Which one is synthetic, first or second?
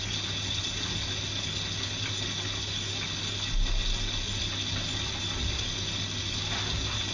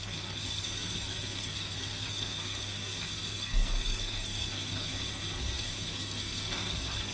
second